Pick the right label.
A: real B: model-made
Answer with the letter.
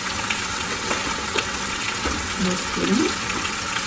B